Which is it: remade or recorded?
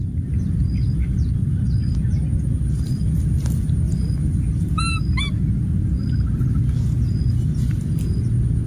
recorded